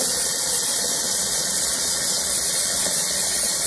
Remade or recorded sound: remade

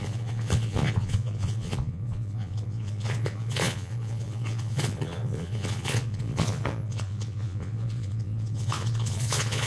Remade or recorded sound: remade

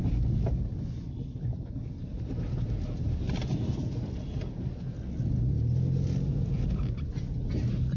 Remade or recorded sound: recorded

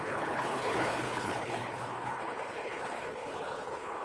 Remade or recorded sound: remade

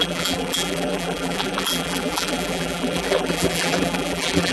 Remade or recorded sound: remade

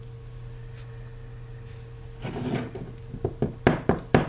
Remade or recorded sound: recorded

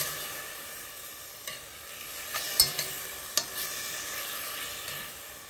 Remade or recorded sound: recorded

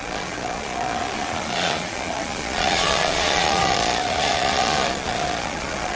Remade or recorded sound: remade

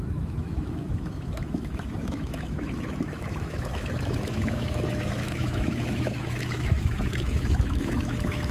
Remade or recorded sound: remade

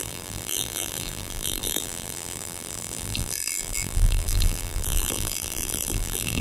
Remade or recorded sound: remade